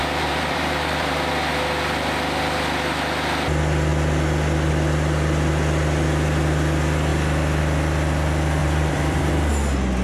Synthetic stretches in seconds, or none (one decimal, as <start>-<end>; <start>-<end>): 0.0-1.3; 8.6-9.3